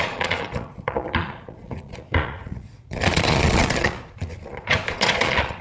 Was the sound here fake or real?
fake